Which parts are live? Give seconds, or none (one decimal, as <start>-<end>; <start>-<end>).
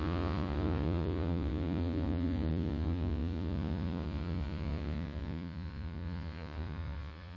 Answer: none